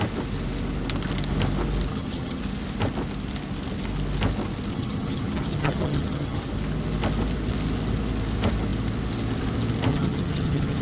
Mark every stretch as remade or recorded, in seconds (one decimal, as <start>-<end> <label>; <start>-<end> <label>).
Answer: 0.0-1.9 recorded; 1.9-2.4 remade; 2.4-4.7 recorded; 4.7-6.4 remade; 6.4-9.9 recorded; 9.9-10.8 remade